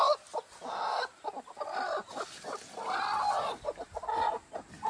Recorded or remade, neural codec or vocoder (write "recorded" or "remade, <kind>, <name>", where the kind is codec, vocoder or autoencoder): recorded